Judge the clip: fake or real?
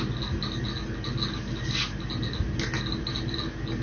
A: real